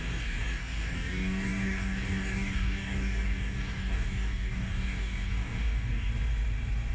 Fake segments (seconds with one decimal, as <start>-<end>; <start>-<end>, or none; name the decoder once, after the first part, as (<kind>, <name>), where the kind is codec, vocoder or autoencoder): 0.0-6.1 (codec, DAC)